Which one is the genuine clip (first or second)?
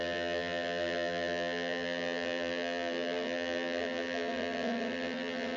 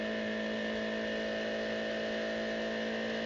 second